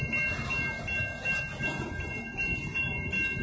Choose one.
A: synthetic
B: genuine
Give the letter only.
B